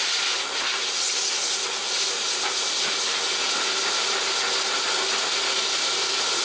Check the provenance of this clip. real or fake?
real